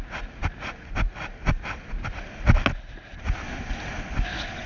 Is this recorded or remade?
recorded